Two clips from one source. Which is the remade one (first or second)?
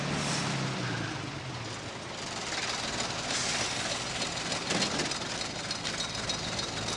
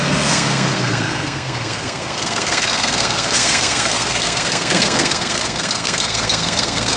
second